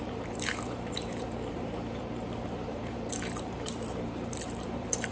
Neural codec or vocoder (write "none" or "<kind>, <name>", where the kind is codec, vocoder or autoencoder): vocoder, BigVGAN v2